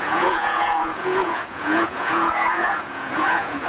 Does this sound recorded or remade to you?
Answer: remade